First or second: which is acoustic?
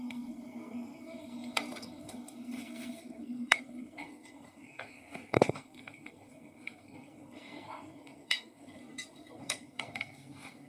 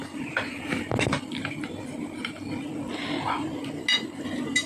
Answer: second